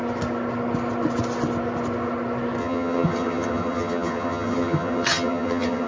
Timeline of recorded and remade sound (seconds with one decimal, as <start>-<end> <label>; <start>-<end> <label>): 0.0-2.6 recorded; 2.6-5.9 remade